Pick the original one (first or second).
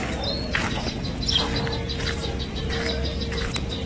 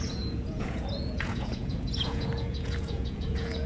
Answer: first